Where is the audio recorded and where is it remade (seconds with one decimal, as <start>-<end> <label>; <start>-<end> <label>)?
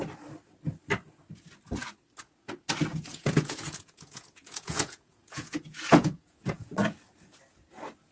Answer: 0.0-2.9 recorded; 2.9-6.7 remade; 6.7-8.1 recorded